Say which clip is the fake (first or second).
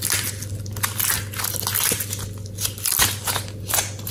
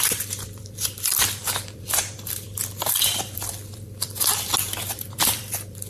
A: second